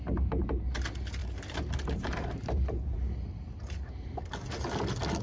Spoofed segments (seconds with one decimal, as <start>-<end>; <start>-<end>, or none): 1.2-4.3